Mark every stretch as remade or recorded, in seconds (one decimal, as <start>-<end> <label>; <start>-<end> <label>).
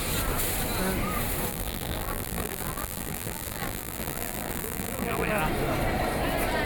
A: 0.0-1.5 recorded; 1.5-5.3 remade; 5.3-6.7 recorded